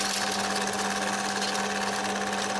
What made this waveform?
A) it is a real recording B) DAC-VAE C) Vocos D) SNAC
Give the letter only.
A